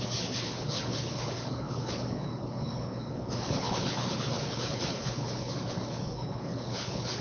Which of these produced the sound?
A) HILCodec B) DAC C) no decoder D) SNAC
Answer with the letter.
A